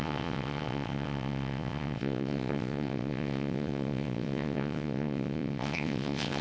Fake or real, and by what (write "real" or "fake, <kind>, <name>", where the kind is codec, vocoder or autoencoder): fake, vocoder, WaveNeXt